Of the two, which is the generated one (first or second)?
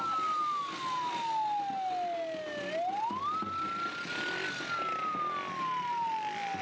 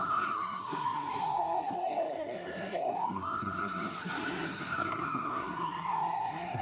second